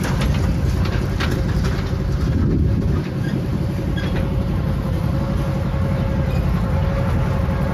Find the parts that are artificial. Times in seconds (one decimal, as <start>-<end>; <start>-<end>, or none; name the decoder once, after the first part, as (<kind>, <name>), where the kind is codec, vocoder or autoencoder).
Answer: 3.5-5.2 (vocoder, BigVGAN v2)